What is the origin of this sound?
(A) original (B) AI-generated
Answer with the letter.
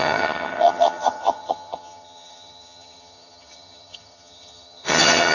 B